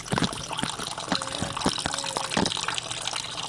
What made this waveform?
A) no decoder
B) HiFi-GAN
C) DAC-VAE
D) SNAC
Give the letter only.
A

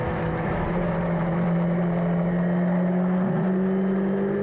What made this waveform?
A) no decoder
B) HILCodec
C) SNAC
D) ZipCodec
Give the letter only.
A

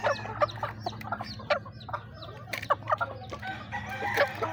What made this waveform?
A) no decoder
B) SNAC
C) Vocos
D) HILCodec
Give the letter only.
A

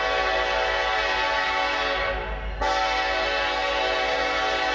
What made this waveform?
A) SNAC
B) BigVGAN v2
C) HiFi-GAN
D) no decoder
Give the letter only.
D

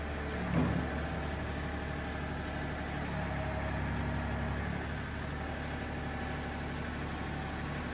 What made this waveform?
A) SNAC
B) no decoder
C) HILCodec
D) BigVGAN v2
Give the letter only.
B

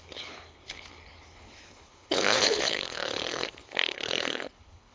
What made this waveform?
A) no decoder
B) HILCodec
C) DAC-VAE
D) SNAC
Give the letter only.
B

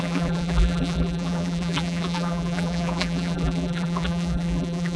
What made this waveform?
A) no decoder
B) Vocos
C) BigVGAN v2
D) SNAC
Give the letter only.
C